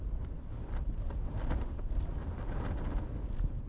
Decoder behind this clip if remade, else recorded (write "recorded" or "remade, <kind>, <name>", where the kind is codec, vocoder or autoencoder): recorded